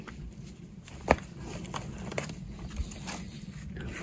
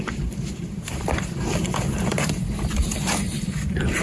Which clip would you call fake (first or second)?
second